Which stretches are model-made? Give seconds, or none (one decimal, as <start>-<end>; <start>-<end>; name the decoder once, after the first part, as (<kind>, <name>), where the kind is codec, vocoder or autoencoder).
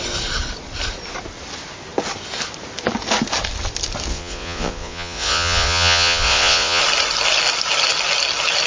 4.1-6.8 (vocoder, Vocos)